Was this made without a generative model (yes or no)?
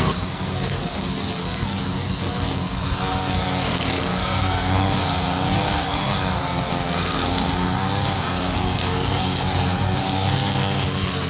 no